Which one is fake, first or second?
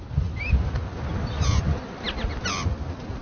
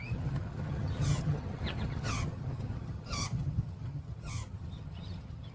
second